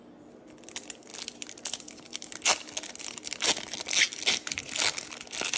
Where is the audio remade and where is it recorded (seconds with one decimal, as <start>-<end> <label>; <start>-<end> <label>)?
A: 0.0-5.6 recorded